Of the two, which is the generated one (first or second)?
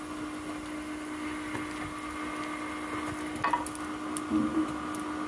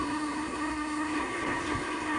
second